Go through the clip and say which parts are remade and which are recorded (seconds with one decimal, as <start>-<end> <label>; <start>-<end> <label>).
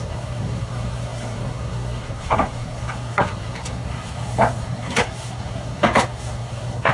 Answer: 0.0-6.9 remade